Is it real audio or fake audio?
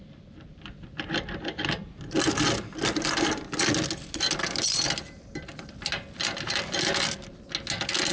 real